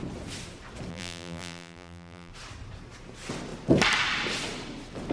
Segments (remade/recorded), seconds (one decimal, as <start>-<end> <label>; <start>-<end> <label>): 0.0-0.9 recorded; 0.9-2.3 remade; 2.3-5.1 recorded